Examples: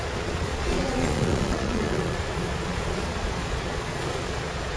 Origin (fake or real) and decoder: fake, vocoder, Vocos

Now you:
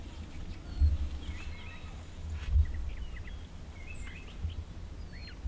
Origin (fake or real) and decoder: real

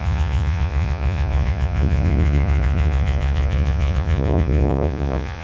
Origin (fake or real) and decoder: fake, vocoder, Vocos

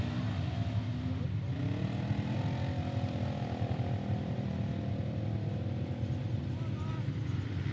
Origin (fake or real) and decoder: real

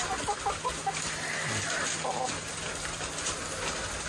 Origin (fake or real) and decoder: real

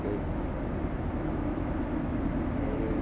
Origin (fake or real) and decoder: real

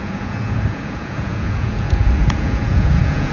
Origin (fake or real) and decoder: fake, vocoder, Vocos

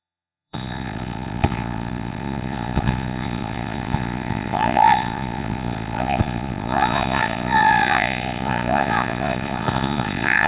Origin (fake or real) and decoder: fake, vocoder, Vocos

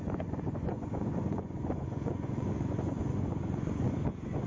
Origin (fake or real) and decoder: fake, vocoder, Vocos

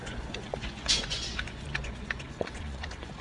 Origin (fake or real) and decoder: fake, vocoder, Vocos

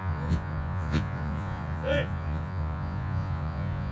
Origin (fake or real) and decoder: fake, vocoder, Vocos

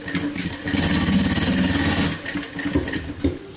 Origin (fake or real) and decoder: real